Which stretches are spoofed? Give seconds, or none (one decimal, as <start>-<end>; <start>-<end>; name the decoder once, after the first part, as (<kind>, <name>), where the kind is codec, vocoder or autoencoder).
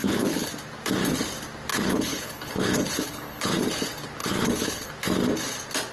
0.0-0.5 (codec, HILCodec); 1.7-3.6; 4.2-4.9